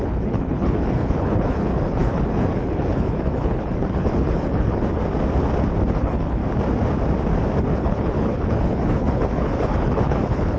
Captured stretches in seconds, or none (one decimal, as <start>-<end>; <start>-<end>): 5.0-5.9; 6.4-7.6